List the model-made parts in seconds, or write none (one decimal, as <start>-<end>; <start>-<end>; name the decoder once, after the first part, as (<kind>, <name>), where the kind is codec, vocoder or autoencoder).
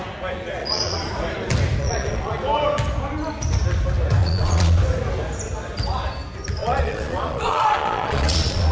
0.6-1.1 (vocoder, Vocos); 1.8-2.4; 4.2-4.8; 6.6-8.7